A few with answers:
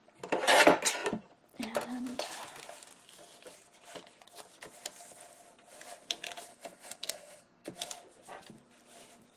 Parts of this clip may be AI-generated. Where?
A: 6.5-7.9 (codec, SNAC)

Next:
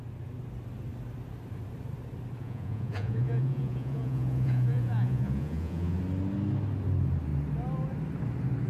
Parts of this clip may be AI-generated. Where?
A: 2.4-6.0 (vocoder, Vocos)

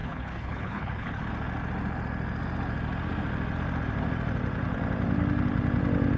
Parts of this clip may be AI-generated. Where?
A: 0.0-1.2 (codec, HILCodec)

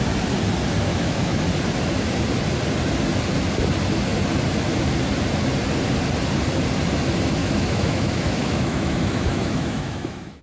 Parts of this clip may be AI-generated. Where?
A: 0.9-1.4 (autoencoder, DAC-VAE); 7.4-10.4